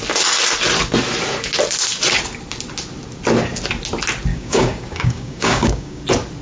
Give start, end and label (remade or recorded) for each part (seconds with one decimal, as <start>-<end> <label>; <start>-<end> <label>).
0.0-4.3 recorded; 4.3-6.0 remade; 6.0-6.4 recorded